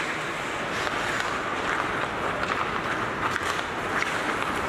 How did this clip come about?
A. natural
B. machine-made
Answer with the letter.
A